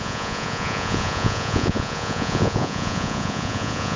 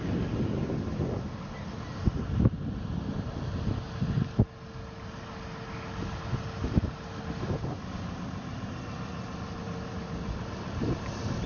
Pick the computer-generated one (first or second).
first